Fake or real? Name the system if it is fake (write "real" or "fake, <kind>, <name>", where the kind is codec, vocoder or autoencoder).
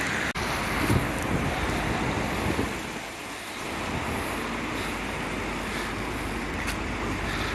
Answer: real